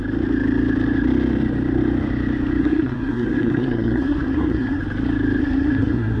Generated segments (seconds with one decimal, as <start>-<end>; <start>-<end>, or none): 2.6-4.8; 5.4-6.2